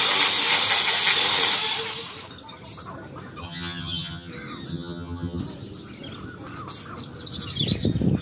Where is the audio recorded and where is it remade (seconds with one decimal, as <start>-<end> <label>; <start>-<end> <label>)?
0.0-3.4 recorded; 3.4-4.3 remade; 4.3-4.7 recorded; 4.7-5.4 remade; 5.4-8.2 recorded